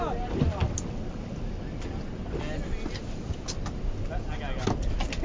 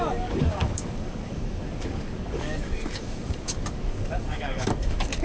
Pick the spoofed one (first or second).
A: second